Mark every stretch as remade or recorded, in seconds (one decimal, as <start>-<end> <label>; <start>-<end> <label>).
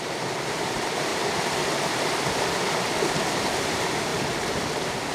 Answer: 0.0-1.1 remade; 1.1-3.4 recorded; 3.4-4.1 remade; 4.1-5.1 recorded